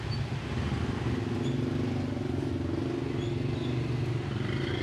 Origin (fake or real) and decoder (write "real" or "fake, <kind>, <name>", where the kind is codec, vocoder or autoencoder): real